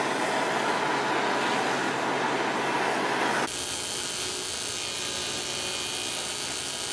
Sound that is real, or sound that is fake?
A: real